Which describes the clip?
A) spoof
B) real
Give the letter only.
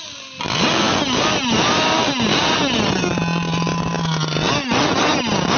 B